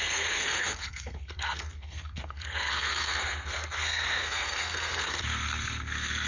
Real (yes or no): no